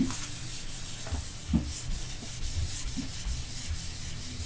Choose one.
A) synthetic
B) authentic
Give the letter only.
B